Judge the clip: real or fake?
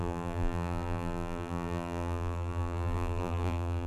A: fake